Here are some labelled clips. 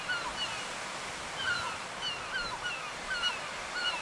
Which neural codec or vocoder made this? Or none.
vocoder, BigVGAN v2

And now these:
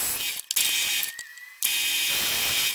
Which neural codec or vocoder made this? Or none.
none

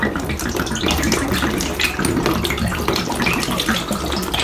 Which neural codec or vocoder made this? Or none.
none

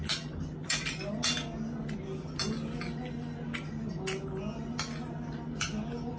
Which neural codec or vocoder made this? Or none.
none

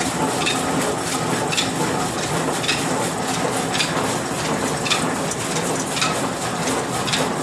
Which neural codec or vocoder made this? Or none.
none